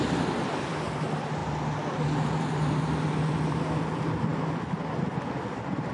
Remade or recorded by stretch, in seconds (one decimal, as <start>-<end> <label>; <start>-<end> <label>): 0.0-5.9 recorded